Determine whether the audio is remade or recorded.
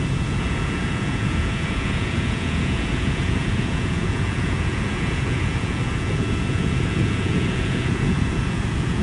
remade